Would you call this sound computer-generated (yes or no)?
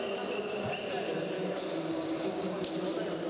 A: no